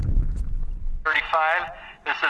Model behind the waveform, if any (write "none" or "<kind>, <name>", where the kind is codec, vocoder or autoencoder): vocoder, BigVGAN v2